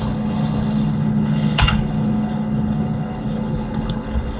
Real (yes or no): no